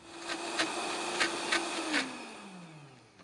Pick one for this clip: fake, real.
real